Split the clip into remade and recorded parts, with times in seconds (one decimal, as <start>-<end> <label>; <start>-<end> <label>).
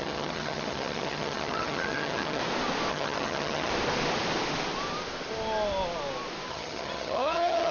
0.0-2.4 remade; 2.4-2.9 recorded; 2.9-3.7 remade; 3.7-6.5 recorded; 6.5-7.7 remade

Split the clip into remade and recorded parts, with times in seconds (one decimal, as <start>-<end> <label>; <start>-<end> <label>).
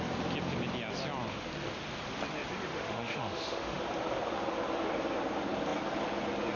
0.0-2.7 recorded; 2.7-3.8 remade; 3.8-6.6 recorded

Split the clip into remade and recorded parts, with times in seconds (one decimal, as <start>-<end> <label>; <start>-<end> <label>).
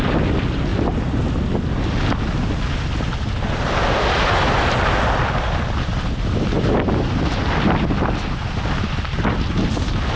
0.0-10.2 recorded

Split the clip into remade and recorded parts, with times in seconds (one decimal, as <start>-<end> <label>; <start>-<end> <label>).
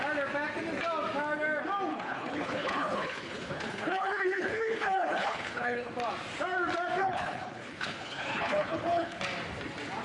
0.0-1.9 recorded; 1.9-5.9 remade; 5.9-7.0 recorded; 7.0-9.2 remade; 9.2-10.0 recorded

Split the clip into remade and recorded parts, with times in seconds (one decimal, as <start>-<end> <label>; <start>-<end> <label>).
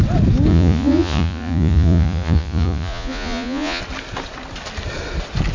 0.0-0.5 recorded; 0.5-3.8 remade; 3.8-5.5 recorded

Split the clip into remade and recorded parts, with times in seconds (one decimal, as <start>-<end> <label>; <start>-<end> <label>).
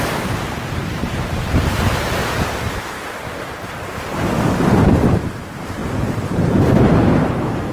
0.0-2.2 remade; 2.2-4.0 recorded; 4.0-7.7 remade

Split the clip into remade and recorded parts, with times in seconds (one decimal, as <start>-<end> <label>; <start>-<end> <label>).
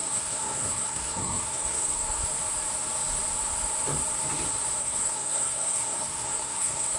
0.0-2.2 remade; 2.2-4.8 recorded; 4.8-7.0 remade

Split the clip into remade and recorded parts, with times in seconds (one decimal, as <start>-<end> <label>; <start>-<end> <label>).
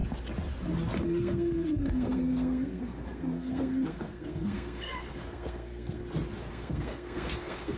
0.0-1.0 recorded; 1.0-6.0 remade; 6.0-6.5 recorded; 6.5-7.8 remade